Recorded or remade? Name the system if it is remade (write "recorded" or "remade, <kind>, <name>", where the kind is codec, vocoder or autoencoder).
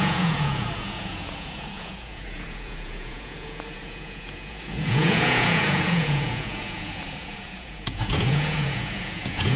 remade, vocoder, Vocos